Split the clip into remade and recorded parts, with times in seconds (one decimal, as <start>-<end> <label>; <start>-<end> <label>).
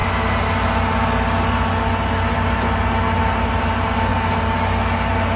0.0-5.4 recorded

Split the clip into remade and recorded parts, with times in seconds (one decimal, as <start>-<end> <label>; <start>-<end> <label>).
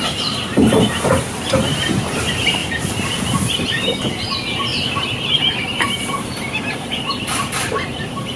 0.0-2.6 remade; 2.6-3.5 recorded; 3.5-8.4 remade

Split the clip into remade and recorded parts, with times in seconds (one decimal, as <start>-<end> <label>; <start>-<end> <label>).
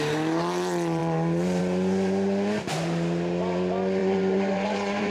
0.0-4.0 recorded; 4.0-5.1 remade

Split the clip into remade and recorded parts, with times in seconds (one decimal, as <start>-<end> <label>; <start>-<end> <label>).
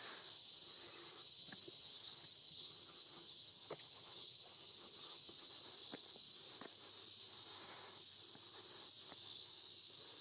0.0-0.4 recorded; 0.4-5.5 remade; 5.5-10.2 recorded